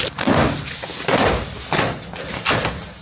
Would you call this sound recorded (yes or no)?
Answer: yes